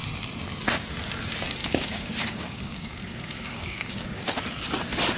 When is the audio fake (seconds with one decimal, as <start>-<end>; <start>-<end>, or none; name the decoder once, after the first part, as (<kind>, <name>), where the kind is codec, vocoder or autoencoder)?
1.6-4.3 (codec, DAC)